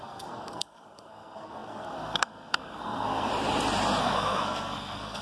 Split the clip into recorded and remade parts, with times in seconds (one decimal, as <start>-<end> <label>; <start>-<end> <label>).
0.0-3.3 remade; 3.3-4.0 recorded; 4.0-5.2 remade